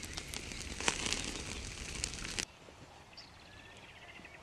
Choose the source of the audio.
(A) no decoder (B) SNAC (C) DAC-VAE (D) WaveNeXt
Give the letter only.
A